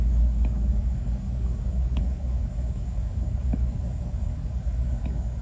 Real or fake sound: fake